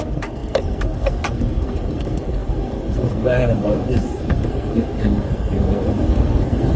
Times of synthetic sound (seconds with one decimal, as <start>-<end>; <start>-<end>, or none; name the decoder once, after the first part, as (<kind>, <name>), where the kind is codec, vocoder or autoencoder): 0.0-6.8 (codec, SNAC)